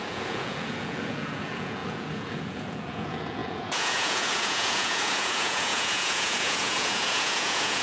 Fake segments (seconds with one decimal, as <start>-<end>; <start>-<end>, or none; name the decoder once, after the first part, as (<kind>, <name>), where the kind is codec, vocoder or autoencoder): 0.0-7.8 (vocoder, Vocos)